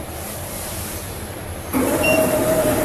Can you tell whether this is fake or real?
fake